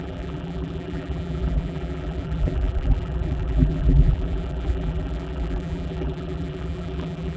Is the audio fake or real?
fake